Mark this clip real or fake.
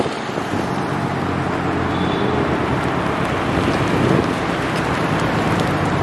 real